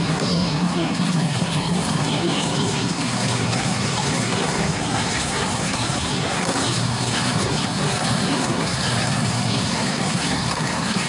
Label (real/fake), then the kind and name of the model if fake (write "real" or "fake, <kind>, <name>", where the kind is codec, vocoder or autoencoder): fake, codec, SNAC